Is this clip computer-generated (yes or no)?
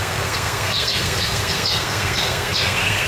yes